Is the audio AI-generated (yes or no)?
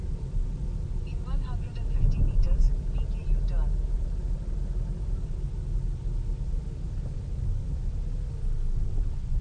no